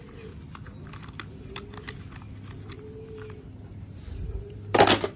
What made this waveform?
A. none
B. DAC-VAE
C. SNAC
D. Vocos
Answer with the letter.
A